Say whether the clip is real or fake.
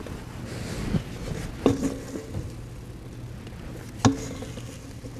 real